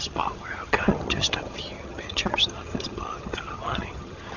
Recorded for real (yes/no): no